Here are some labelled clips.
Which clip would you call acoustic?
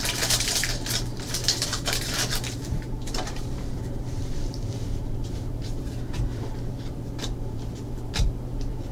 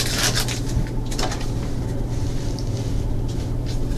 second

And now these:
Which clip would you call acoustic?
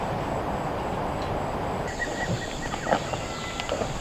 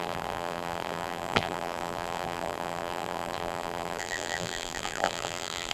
first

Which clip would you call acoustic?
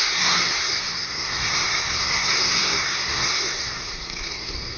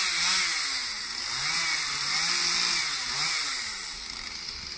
second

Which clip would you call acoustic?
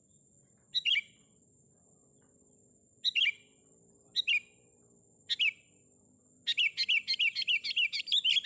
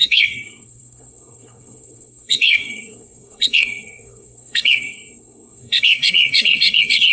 first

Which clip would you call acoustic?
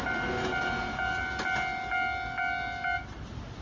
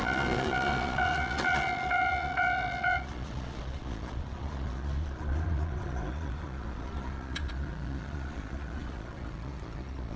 first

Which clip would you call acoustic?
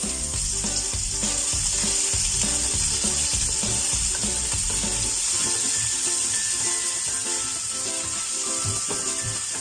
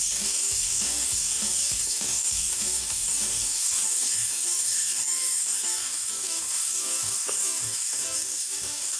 first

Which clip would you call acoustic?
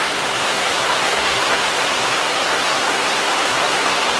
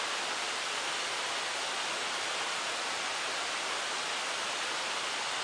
second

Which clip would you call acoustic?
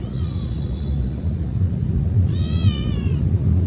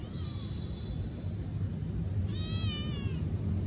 second